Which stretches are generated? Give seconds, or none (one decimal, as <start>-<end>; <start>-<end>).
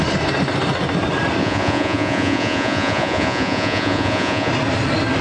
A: 1.4-4.5